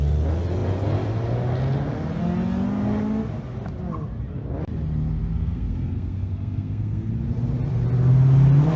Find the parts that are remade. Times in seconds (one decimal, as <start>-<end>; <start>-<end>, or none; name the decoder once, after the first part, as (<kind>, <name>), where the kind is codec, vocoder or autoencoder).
5.3-7.1 (codec, SNAC)